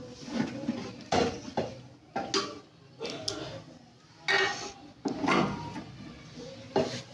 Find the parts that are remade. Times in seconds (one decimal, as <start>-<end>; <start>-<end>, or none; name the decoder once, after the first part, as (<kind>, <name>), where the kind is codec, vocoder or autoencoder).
none

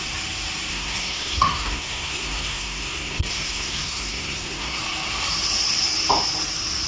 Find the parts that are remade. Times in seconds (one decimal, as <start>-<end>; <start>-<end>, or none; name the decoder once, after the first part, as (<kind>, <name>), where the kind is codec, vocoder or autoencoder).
0.7-4.8 (codec, SNAC)

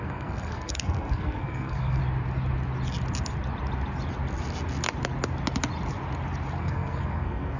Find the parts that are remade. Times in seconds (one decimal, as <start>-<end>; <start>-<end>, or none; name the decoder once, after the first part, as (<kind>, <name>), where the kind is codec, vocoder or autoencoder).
0.0-2.0 (codec, SNAC); 6.6-7.6

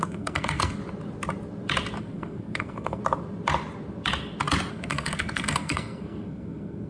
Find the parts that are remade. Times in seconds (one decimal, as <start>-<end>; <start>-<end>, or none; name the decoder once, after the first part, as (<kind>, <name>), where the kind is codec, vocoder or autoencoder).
0.0-0.8 (codec, SNAC); 2.0-3.0; 4.7-6.9

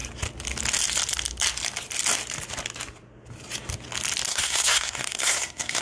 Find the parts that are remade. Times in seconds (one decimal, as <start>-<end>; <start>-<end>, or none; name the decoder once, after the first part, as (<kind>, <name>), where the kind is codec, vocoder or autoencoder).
4.3-5.8 (codec, SNAC)

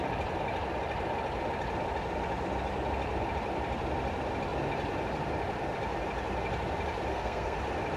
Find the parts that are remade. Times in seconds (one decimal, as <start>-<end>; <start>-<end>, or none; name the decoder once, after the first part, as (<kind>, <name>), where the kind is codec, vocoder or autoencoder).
7.1-7.6 (codec, SNAC)

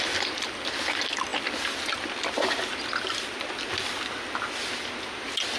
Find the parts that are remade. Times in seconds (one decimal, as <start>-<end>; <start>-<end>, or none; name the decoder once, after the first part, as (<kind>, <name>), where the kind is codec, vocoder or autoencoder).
none